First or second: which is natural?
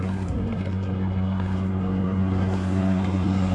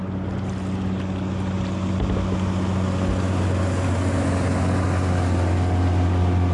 second